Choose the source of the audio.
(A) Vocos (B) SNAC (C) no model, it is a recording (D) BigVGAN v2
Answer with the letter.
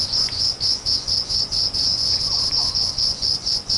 A